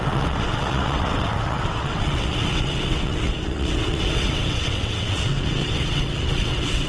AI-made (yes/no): yes